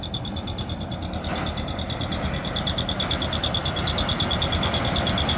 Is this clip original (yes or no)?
yes